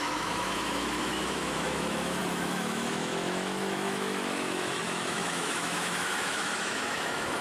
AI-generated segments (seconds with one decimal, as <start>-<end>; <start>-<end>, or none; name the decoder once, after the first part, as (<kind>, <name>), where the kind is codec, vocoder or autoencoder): 0.0-7.4 (autoencoder, DAC-VAE)